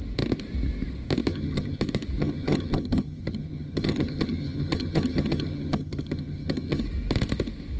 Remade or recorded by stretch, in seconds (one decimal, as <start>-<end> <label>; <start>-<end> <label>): 0.0-1.3 recorded; 1.3-1.8 remade; 1.8-2.2 recorded; 2.2-6.8 remade; 6.8-7.8 recorded

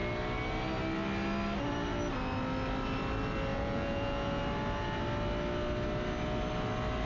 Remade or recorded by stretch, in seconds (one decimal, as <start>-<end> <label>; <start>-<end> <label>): 0.0-3.5 recorded; 3.5-4.4 remade; 4.4-7.1 recorded

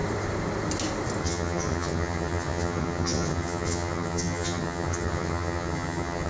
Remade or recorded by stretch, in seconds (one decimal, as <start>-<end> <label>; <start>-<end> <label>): 0.0-1.2 recorded; 1.2-6.3 remade